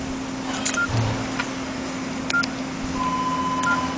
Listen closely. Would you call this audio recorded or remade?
recorded